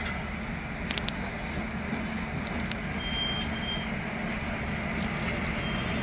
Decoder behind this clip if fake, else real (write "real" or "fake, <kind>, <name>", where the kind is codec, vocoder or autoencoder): real